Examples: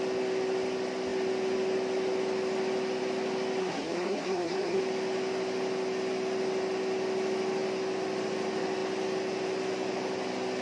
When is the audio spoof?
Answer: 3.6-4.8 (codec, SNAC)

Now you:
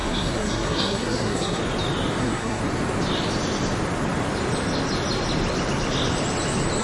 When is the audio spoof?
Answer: 0.0-1.6 (codec, SNAC); 2.2-2.6

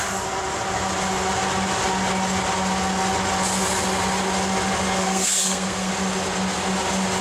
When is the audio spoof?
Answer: 5.0-5.9 (codec, SNAC)

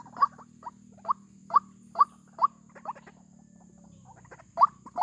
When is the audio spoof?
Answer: none

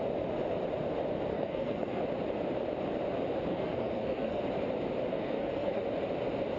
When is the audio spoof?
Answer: 1.3-2.0 (codec, SNAC); 3.5-4.4; 5.1-5.8